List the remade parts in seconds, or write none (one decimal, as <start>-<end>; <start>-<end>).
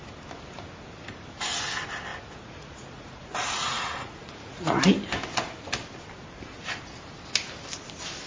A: 2.1-4.8